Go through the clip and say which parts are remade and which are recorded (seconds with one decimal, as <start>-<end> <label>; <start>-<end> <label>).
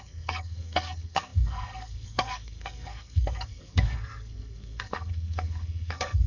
0.0-6.3 remade